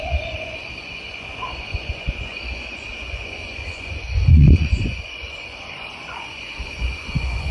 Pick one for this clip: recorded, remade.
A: remade